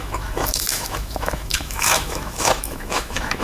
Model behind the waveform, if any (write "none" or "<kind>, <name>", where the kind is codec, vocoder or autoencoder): autoencoder, DAC-VAE